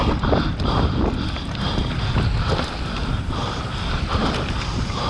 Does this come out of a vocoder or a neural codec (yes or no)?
no